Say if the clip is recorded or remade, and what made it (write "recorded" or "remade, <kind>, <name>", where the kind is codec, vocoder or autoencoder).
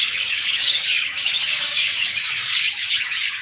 remade, codec, DAC